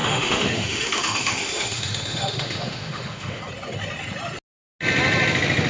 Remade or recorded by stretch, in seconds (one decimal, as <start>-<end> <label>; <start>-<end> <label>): 0.0-3.4 remade; 3.4-5.7 recorded